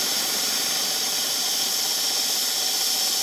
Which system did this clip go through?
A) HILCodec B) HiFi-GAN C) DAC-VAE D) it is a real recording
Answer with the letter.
D